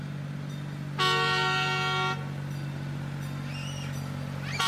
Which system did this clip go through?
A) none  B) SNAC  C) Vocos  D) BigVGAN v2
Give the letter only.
A